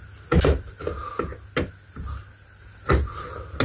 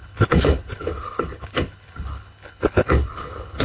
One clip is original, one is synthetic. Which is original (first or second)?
first